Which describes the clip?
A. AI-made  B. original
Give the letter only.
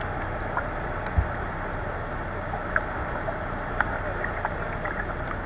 B